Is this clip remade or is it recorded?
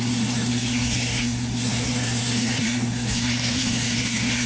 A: remade